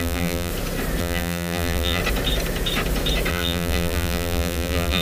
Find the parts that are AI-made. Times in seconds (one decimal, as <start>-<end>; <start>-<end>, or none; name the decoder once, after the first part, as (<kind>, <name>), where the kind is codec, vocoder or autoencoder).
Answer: 0.0-0.5 (vocoder, BigVGAN v2); 1.0-2.0; 3.3-5.0